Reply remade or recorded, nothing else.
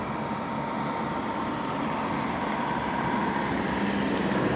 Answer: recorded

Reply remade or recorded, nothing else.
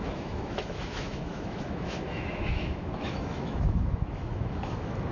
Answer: remade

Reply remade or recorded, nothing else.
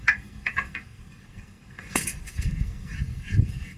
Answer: remade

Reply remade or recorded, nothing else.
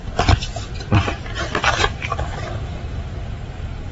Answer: remade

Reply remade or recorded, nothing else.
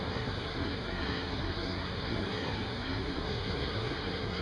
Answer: remade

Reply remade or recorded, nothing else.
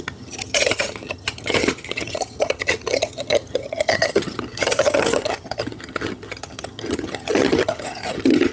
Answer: remade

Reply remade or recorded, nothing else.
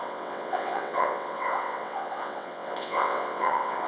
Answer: remade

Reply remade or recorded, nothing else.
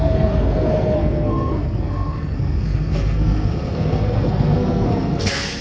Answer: remade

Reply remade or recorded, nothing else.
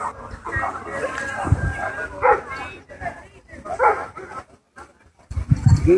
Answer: recorded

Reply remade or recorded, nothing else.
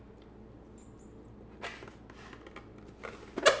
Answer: recorded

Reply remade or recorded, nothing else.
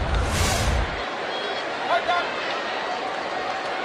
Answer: remade